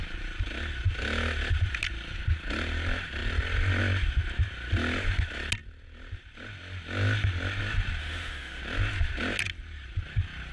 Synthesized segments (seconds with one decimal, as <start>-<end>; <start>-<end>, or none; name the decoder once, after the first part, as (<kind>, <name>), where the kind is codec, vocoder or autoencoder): 8.0-8.6 (autoencoder, DAC-VAE)